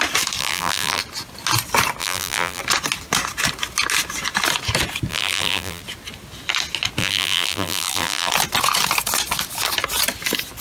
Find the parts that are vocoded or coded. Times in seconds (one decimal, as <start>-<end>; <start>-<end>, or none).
0.4-1.0; 2.0-2.6; 5.1-5.8; 7.0-8.3